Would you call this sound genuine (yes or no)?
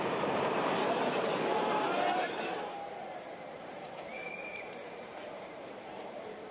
no